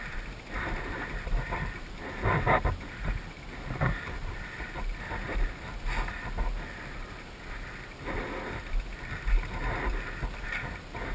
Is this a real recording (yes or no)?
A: yes